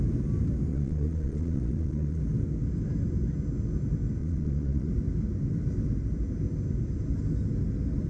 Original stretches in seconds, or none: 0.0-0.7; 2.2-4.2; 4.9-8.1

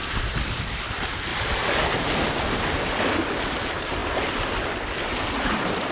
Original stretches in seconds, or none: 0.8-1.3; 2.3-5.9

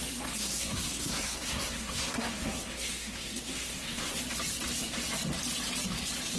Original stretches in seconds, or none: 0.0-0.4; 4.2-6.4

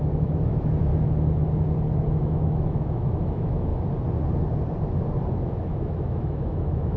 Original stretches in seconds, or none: 0.9-2.1; 3.7-5.3

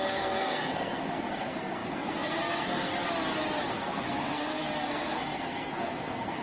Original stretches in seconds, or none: 2.9-3.7

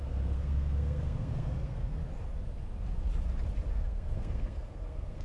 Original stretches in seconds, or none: 2.0-3.7